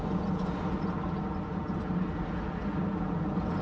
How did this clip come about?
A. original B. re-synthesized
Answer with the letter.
A